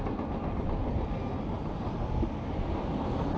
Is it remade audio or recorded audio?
recorded